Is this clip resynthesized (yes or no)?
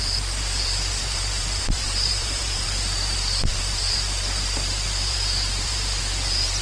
yes